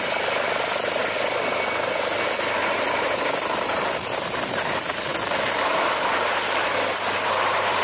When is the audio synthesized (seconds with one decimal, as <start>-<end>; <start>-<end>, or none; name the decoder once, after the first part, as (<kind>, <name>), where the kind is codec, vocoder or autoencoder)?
0.0-1.0 (vocoder, BigVGAN v2); 2.7-5.1; 5.6-7.8